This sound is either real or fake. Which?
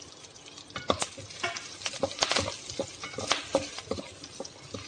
real